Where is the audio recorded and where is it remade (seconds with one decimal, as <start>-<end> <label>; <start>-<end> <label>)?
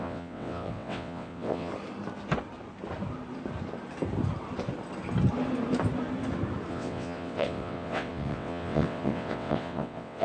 0.0-1.7 remade; 1.7-6.7 recorded; 6.7-10.2 remade